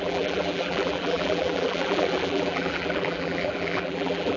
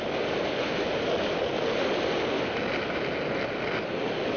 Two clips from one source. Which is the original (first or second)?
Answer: second